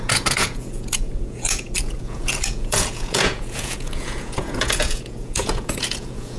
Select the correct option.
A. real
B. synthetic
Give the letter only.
B